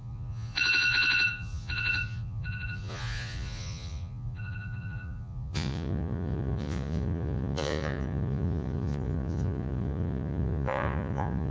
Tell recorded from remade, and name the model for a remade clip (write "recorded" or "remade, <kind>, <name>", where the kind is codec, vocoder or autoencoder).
remade, vocoder, Vocos